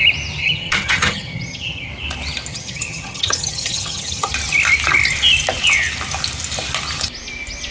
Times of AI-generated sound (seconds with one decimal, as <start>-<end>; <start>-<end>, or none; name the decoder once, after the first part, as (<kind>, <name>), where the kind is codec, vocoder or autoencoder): 0.4-1.9 (vocoder, HiFi-GAN); 2.5-4.3